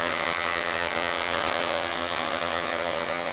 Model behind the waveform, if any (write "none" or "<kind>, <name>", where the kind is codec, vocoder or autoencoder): vocoder, HiFi-GAN